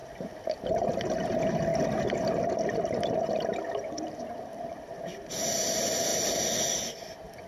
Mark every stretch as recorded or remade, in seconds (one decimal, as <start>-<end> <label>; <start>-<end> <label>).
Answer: 0.0-0.7 remade; 0.7-1.7 recorded; 1.7-5.0 remade; 5.0-7.5 recorded